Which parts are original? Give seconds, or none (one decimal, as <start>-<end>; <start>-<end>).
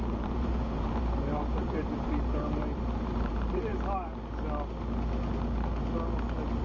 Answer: 3.7-6.6